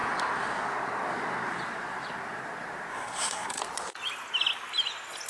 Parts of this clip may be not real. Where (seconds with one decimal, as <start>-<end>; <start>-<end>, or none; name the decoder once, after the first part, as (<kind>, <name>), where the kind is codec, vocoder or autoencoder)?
2.9-3.6 (codec, SNAC)